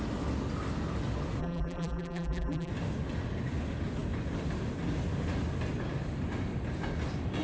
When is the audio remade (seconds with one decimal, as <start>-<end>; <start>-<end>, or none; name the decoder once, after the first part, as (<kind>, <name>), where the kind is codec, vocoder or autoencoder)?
1.4-2.7 (vocoder, BigVGAN v2)